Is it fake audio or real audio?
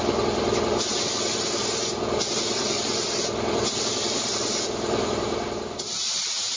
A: real